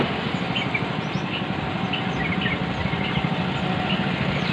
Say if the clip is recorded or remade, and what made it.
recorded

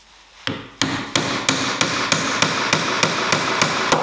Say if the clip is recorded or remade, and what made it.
recorded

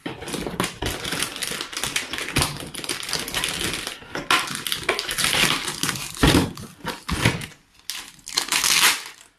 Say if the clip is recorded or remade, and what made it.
recorded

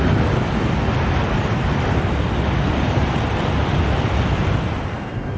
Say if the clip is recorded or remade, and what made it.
recorded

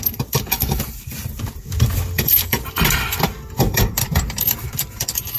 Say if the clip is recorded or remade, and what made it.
remade, vocoder, BigVGAN v2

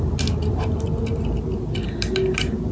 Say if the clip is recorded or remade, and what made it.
recorded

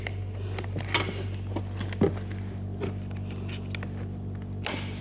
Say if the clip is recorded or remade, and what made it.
recorded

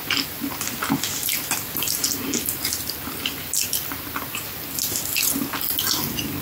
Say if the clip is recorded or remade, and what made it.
recorded